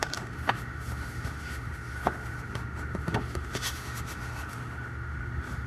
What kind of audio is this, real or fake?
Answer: fake